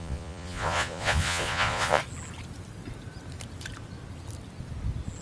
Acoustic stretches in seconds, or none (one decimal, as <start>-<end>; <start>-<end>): 2.0-5.2